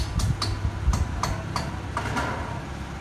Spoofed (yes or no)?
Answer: no